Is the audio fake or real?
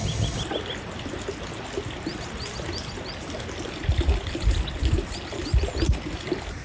real